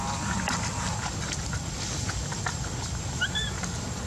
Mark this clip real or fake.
real